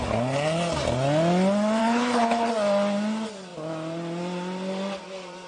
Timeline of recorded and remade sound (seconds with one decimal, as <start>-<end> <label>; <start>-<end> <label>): 0.0-1.8 recorded; 1.8-2.5 remade; 2.5-5.5 recorded